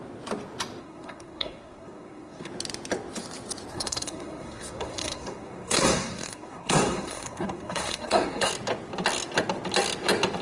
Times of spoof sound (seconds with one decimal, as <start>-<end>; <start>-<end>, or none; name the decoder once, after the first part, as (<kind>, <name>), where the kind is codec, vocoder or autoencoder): 0.8-2.5 (codec, SNAC); 3.7-8.5